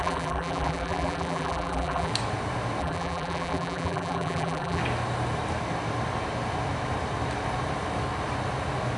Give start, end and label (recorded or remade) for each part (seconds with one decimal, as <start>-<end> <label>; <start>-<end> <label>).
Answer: 0.0-2.1 remade; 2.1-2.8 recorded; 2.8-4.8 remade; 4.8-9.0 recorded